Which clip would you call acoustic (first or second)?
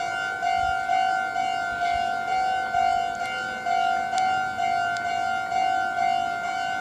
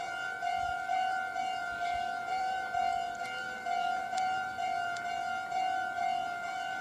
first